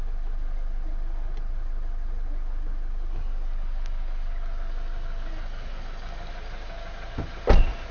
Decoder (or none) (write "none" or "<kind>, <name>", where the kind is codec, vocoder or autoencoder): none